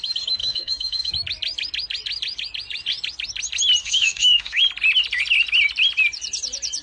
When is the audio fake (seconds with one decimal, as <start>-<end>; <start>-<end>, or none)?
0.4-1.1; 3.8-4.6